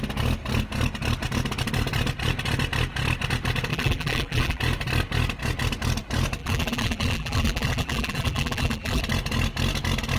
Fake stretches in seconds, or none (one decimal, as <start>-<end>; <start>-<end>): 3.7-4.6; 6.4-9.0